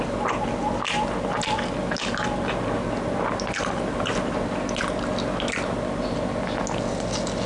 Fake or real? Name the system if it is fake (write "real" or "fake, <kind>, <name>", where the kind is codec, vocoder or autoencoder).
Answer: real